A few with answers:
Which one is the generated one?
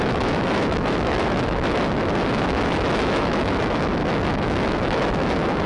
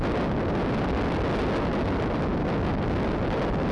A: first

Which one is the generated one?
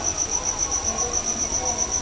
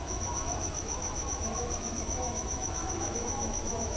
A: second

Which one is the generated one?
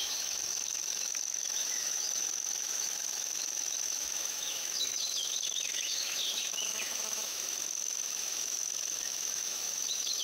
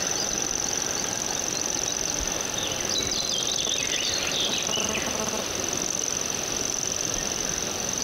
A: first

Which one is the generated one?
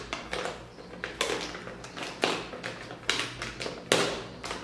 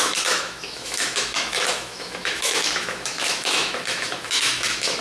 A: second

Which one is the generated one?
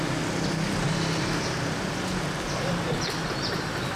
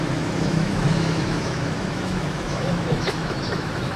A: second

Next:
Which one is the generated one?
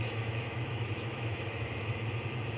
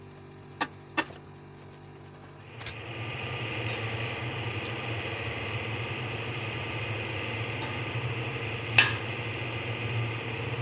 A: first